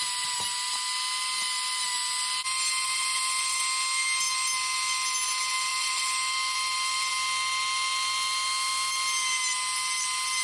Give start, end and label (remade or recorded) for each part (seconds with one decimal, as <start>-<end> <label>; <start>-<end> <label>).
0.0-5.7 recorded; 5.7-7.1 remade; 7.1-10.4 recorded